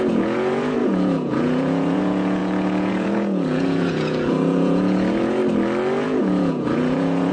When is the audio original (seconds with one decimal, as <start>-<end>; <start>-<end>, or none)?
5.4-6.0